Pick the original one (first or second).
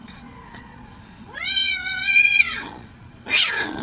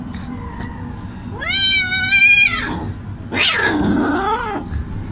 second